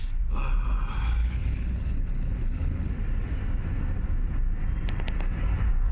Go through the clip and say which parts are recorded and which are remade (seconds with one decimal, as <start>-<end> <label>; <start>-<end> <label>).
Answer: 0.0-1.2 recorded; 1.2-2.9 remade; 2.9-5.9 recorded